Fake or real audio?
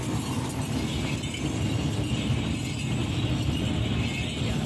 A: real